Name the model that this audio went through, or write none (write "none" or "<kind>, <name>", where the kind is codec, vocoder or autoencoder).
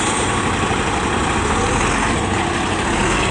none